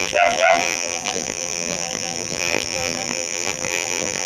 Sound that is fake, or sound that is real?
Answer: fake